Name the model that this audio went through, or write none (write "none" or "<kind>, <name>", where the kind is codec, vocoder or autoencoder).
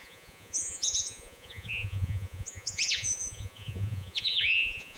vocoder, Vocos